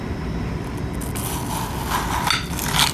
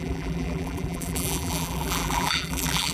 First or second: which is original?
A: first